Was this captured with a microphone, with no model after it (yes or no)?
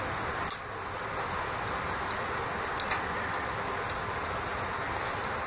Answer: yes